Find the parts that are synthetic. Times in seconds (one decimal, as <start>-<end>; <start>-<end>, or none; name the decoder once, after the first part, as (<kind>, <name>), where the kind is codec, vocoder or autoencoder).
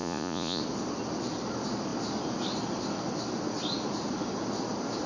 0.0-0.6 (vocoder, Vocos)